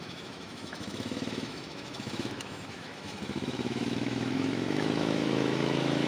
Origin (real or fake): fake